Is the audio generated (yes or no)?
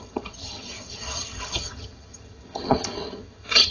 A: yes